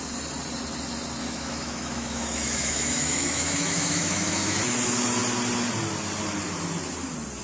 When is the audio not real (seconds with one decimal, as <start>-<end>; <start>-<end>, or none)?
1.2-4.6